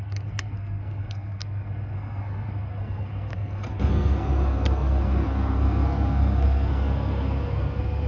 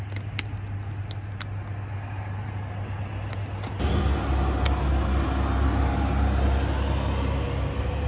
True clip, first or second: second